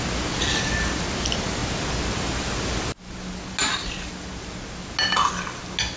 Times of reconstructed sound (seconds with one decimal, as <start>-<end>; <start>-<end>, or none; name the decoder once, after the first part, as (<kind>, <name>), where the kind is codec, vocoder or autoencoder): none